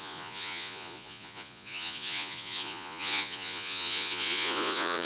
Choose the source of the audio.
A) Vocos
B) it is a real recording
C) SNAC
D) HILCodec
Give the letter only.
A